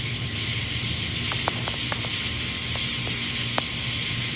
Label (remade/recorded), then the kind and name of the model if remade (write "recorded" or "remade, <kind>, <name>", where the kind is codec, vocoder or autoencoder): recorded